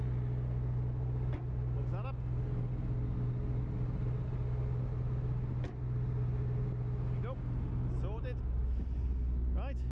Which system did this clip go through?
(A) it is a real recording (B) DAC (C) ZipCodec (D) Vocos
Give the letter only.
A